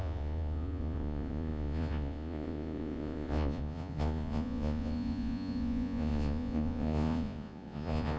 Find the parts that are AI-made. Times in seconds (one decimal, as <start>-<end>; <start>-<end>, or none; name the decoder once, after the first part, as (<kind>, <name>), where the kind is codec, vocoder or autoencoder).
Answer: 0.0-8.2 (vocoder, Vocos)